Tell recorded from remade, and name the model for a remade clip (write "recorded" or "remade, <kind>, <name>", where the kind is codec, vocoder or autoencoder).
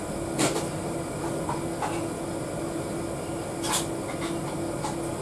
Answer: recorded